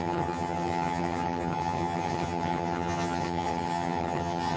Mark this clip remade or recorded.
remade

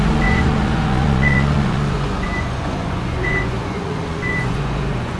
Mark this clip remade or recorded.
remade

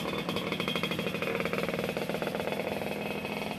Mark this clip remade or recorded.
recorded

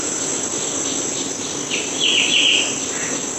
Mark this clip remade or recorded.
recorded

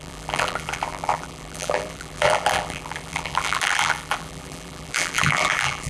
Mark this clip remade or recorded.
remade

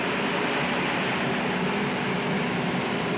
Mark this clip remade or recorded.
recorded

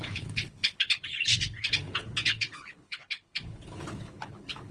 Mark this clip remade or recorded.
remade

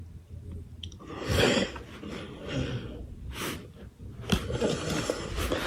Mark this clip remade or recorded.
recorded